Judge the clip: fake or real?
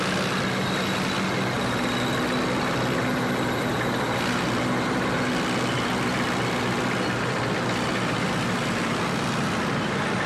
real